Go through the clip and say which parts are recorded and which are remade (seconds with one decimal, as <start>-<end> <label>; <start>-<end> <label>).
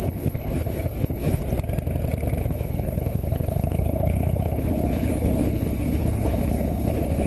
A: 0.0-1.4 remade; 1.4-2.4 recorded; 2.4-7.3 remade